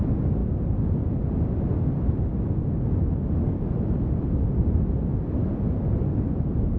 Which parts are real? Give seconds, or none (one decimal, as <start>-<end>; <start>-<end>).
0.4-3.8